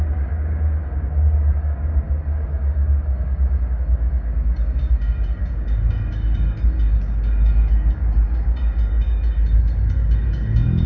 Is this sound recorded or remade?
remade